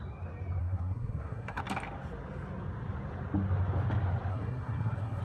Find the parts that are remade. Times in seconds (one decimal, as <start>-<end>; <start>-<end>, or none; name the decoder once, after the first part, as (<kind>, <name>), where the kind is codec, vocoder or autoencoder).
0.6-1.6 (codec, SNAC); 4.3-5.2